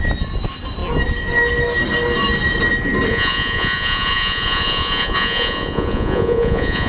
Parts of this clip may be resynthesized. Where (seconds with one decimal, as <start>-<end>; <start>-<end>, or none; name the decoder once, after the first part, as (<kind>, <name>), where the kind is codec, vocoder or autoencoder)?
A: 3.1-6.9 (vocoder, Vocos)